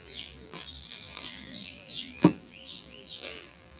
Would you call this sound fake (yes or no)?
yes